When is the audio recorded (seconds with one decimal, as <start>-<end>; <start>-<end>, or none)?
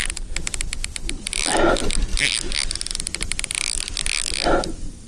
0.0-5.1